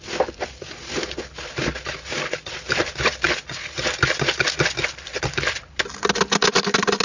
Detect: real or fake real